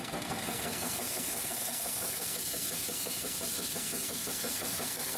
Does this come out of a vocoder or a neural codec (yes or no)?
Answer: yes